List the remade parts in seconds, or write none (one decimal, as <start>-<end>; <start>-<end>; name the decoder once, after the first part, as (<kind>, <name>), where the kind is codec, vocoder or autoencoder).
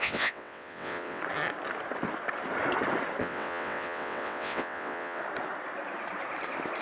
0.0-1.2 (vocoder, WaveNeXt); 3.2-5.2